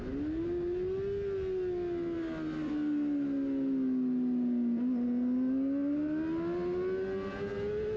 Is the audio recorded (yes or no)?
yes